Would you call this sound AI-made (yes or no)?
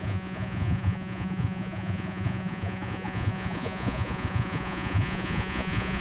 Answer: yes